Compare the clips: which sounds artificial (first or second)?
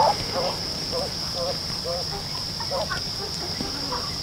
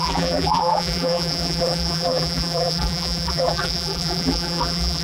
second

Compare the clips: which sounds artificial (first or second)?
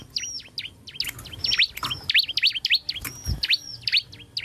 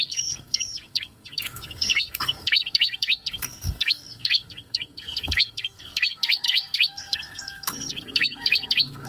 second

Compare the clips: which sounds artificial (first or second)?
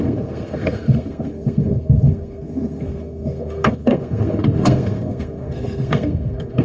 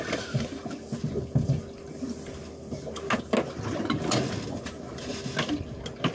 first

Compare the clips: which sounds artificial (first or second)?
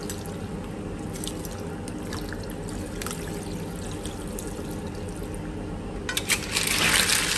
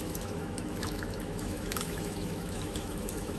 second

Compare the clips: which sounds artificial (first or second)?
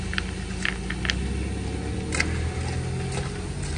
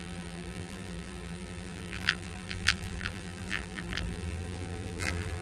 second